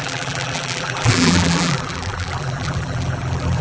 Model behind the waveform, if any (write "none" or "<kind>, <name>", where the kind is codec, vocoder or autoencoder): vocoder, BigVGAN v2